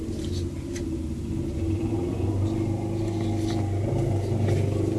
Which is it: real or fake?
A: real